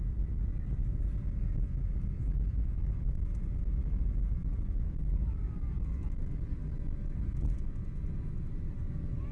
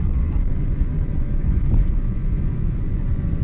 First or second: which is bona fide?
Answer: first